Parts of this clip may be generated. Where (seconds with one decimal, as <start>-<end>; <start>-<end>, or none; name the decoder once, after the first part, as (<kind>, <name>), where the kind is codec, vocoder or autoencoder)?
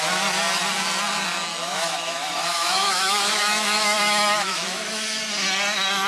1.5-5.2 (autoencoder, DAC-VAE)